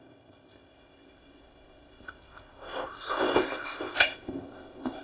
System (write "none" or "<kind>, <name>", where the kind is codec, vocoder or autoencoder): codec, ZipCodec